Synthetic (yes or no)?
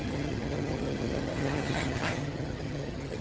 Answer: yes